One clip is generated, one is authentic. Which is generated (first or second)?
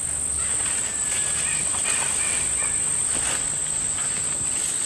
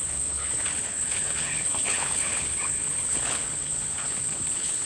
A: second